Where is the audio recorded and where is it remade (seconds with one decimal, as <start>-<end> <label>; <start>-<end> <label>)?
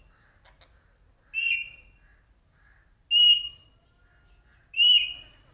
0.0-5.5 recorded